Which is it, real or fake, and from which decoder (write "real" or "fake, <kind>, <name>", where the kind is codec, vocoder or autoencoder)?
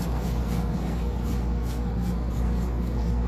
fake, codec, SNAC